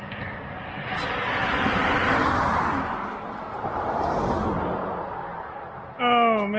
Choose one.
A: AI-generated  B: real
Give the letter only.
B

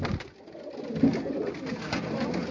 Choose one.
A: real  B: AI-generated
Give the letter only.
A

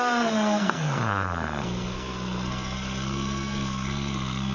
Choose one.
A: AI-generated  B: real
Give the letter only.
A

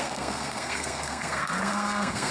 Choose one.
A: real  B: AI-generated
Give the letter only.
B